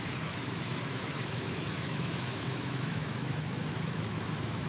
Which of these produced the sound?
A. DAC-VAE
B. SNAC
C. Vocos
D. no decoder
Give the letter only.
A